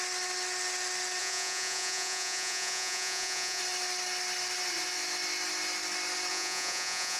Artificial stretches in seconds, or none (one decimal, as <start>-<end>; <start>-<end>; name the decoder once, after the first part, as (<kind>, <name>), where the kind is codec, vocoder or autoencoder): 1.2-3.6 (vocoder, Vocos); 6.3-7.2

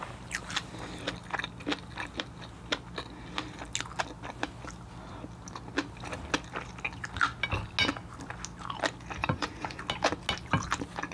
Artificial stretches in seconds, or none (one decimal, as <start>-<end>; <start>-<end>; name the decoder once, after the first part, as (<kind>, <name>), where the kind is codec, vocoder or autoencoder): 9.2-9.8 (vocoder, Vocos)